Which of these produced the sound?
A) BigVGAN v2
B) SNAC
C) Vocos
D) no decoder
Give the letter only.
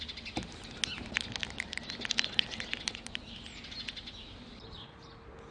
D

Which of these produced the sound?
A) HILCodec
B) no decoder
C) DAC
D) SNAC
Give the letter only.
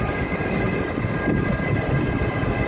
B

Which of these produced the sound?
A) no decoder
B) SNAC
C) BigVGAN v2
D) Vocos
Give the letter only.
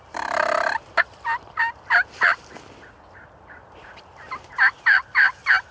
A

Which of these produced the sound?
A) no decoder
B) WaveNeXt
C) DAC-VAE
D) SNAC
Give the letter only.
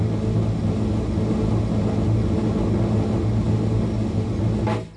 A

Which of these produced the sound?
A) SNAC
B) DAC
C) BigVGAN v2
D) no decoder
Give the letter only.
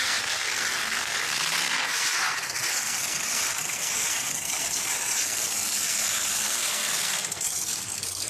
A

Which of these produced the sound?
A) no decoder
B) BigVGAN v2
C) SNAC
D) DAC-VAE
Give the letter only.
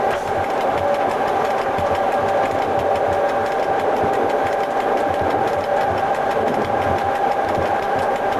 A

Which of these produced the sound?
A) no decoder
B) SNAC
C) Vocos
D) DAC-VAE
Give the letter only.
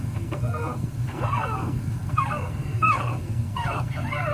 B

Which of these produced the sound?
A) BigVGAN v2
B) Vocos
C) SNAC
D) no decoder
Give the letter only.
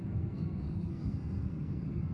C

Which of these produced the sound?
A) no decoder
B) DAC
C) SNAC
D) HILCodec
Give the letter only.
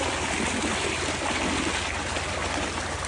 A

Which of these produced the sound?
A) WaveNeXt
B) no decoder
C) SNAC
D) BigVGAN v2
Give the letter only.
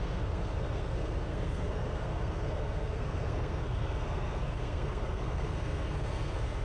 C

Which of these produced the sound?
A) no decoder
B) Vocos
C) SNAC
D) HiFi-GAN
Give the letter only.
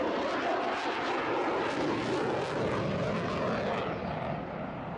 A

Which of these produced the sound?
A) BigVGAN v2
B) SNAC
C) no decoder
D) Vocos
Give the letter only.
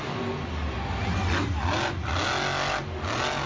C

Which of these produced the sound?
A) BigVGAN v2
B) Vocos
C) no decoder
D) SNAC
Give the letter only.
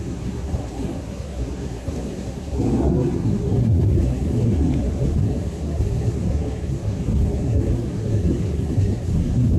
D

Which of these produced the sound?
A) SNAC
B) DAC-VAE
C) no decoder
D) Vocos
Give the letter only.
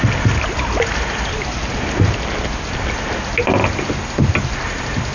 C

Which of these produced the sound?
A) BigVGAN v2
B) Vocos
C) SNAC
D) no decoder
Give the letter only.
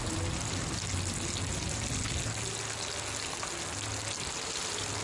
D